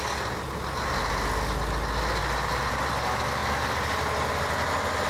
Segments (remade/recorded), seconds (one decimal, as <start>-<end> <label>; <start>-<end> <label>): 0.0-5.1 recorded